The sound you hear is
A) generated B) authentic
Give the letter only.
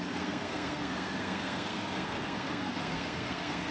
A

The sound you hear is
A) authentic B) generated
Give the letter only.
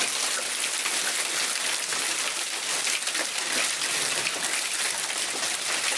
A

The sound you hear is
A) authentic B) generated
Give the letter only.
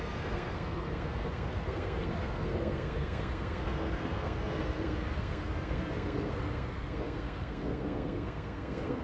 B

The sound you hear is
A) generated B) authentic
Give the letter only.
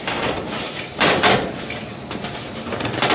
B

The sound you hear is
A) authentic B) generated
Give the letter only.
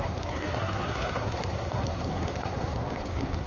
B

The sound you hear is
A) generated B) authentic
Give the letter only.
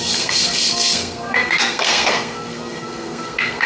A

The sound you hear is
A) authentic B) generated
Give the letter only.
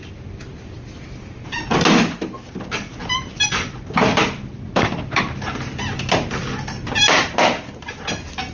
A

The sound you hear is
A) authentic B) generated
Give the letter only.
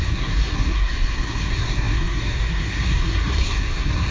B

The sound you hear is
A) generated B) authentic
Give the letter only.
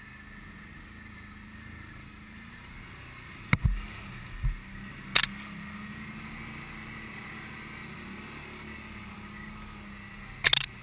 B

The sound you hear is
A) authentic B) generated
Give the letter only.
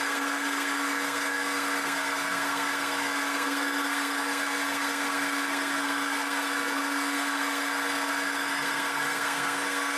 B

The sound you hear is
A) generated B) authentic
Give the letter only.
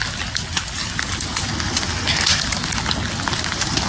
B